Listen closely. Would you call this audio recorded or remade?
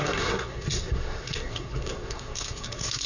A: remade